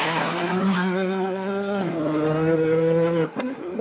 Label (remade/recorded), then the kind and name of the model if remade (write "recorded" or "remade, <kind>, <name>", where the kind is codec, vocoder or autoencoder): remade, codec, SNAC